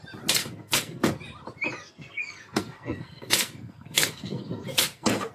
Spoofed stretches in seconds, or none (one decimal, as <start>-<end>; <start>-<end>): 0.4-1.2; 1.8-5.3